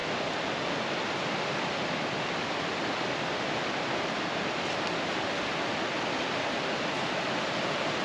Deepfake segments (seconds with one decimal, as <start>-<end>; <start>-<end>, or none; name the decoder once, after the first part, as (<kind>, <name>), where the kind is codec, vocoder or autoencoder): none